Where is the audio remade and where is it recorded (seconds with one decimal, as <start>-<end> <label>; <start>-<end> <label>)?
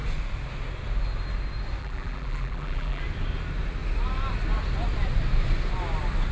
0.0-1.8 recorded; 1.8-3.0 remade; 3.0-6.3 recorded